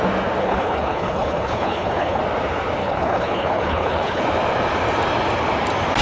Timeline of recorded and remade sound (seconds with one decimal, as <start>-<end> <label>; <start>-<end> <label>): 0.0-0.4 recorded; 0.4-2.2 remade; 2.2-2.8 recorded; 2.8-4.2 remade; 4.2-6.0 recorded